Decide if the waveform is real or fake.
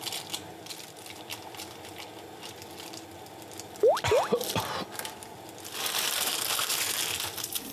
real